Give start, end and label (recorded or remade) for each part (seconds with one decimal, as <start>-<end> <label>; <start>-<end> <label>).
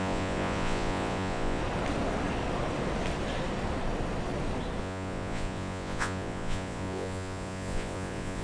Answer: 0.0-1.6 remade; 1.6-4.8 recorded; 4.8-8.4 remade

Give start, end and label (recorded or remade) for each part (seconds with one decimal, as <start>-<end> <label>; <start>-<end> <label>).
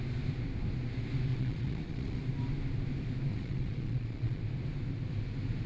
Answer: 0.0-1.3 recorded; 1.3-2.2 remade; 2.2-3.3 recorded; 3.3-4.4 remade; 4.4-5.7 recorded